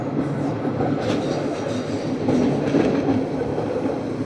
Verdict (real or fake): real